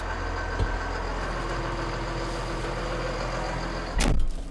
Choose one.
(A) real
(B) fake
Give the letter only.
A